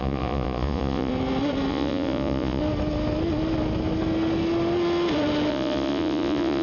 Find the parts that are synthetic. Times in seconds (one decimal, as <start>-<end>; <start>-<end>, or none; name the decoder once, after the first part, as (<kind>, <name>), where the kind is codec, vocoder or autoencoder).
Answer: 0.0-1.1 (vocoder, Vocos); 1.7-2.6; 5.5-6.6